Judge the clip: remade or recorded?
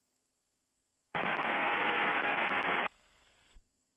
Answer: remade